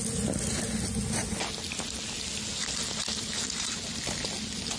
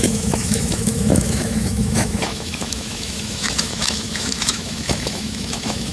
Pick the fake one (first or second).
second